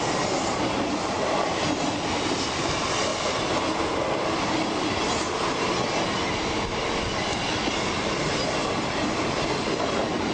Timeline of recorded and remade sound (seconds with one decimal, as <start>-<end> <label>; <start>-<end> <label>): 0.0-10.3 recorded